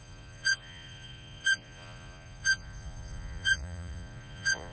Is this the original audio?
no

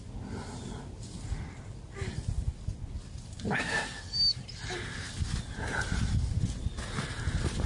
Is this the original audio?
yes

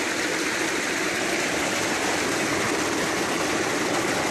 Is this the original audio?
yes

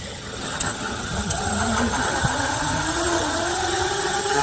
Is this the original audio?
no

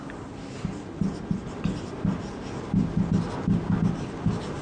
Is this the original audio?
yes